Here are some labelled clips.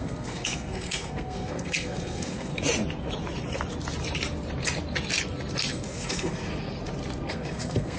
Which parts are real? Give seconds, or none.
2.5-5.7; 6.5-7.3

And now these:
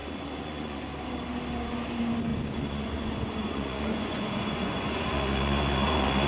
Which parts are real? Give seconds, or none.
0.8-2.3

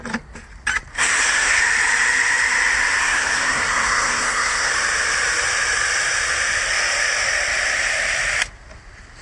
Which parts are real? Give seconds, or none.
0.0-0.9; 1.6-3.0; 4.7-9.2

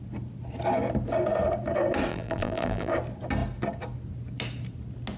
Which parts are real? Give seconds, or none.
0.0-2.1; 2.9-5.2

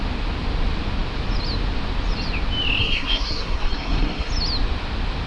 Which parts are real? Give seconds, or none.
0.0-2.8; 4.3-5.3

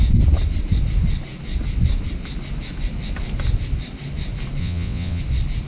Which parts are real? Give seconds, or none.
0.0-4.6; 5.2-5.7

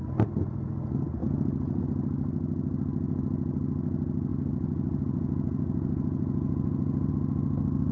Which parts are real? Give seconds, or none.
0.0-1.2; 1.8-4.3; 7.1-7.9

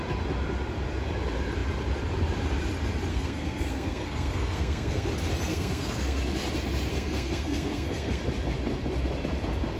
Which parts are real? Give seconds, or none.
0.0-3.1; 5.1-5.5; 6.2-6.9; 8.2-9.8